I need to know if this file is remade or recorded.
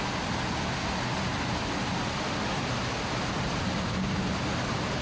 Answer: recorded